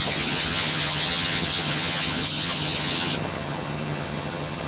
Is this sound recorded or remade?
remade